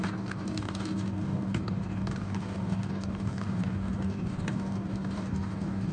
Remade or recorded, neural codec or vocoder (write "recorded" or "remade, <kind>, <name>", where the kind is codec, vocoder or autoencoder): remade, codec, DAC